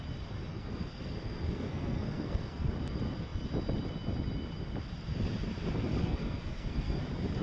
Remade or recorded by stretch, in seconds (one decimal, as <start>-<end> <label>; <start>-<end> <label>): 0.0-0.5 recorded; 0.5-2.7 remade; 2.7-6.0 recorded; 6.0-7.0 remade; 7.0-7.4 recorded